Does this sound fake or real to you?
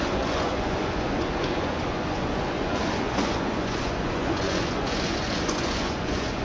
fake